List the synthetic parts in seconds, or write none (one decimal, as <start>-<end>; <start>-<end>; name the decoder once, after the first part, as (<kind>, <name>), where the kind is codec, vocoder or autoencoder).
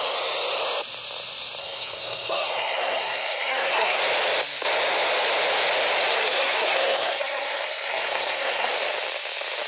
1.6-4.0 (codec, SNAC); 6.1-8.7